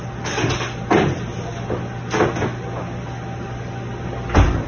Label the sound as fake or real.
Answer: real